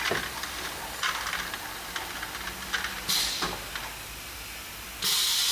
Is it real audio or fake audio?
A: real